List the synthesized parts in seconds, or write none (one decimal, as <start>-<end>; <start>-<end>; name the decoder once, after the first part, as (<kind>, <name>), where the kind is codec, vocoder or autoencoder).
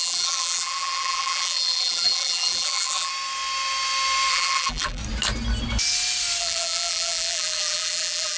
0.0-3.1 (vocoder, BigVGAN v2); 4.3-5.0; 6.4-8.4